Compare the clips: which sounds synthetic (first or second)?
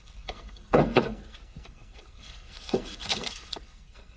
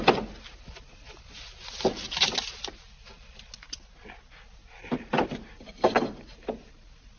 first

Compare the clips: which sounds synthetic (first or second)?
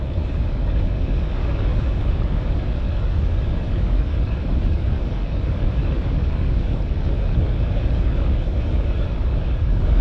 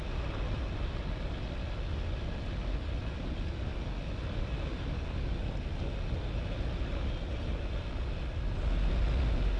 first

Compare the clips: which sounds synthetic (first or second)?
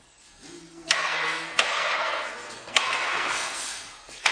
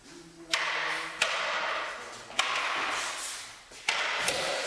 first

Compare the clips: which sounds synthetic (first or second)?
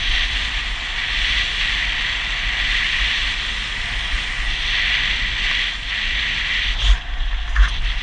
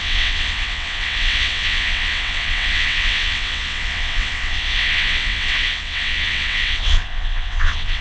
second